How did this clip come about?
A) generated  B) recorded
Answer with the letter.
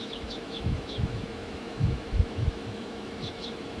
A